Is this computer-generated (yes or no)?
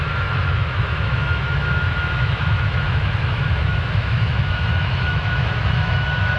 yes